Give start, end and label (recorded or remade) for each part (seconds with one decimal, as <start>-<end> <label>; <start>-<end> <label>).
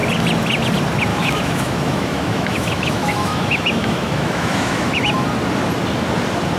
0.0-1.1 recorded; 1.1-5.1 remade; 5.1-6.6 recorded